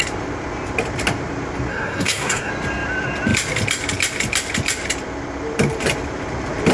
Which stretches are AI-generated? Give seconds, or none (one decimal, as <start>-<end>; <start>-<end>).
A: 1.7-2.5